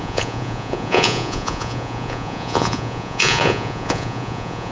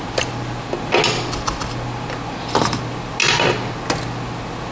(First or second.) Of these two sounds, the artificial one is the first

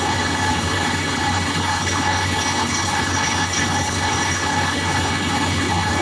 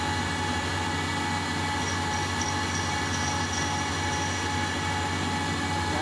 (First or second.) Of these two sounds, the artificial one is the first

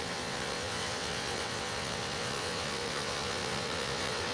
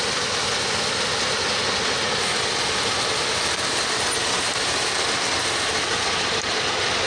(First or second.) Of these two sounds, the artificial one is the first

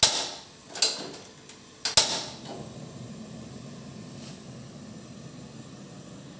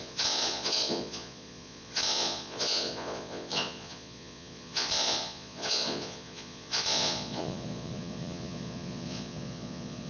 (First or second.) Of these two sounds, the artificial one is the second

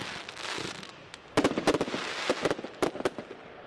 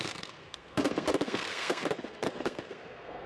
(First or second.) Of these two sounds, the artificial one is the second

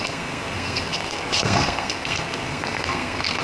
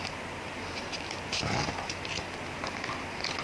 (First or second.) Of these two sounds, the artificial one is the first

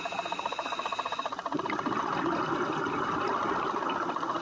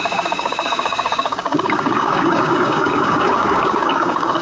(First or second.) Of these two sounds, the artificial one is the second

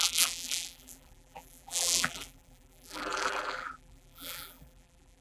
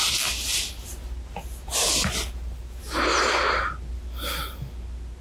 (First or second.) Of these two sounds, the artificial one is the first